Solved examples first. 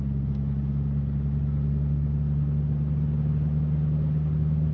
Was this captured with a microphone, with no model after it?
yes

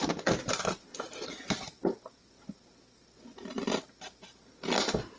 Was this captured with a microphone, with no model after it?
yes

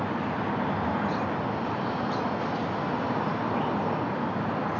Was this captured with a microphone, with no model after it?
yes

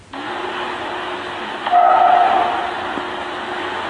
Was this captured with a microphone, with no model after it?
yes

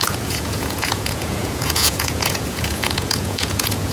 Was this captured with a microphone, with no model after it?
no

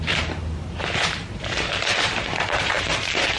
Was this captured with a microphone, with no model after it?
no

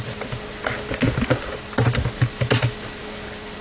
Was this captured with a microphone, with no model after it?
yes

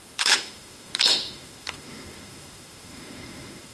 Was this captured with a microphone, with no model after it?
no